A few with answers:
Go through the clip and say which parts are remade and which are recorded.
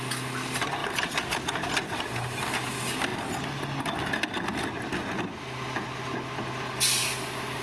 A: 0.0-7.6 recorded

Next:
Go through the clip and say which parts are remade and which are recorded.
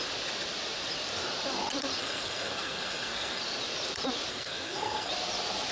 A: 0.0-2.0 recorded; 2.0-3.4 remade; 3.4-4.3 recorded; 4.3-5.1 remade; 5.1-5.7 recorded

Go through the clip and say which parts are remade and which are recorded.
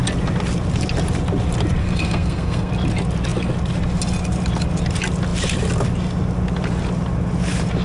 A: 0.0-1.8 recorded; 1.8-2.7 remade; 2.7-7.8 recorded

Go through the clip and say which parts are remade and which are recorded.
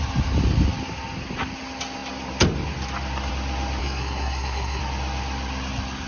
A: 0.0-3.8 recorded; 3.8-4.8 remade; 4.8-6.1 recorded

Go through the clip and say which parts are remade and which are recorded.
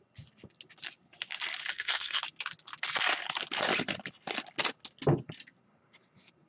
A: 0.0-1.7 recorded; 1.7-2.2 remade; 2.2-6.5 recorded